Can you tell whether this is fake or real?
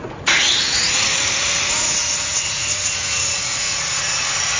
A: fake